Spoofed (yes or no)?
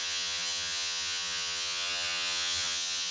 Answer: yes